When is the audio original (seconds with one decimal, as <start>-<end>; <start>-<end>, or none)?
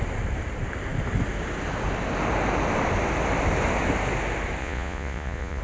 0.0-4.6